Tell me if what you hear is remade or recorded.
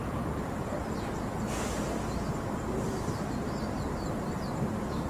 recorded